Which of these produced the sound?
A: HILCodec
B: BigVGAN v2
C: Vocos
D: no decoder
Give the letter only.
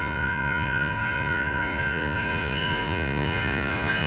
C